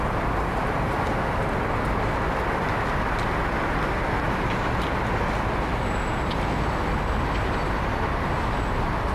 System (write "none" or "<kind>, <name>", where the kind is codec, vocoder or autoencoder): none